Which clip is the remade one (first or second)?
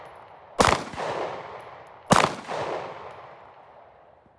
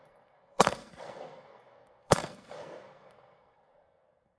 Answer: second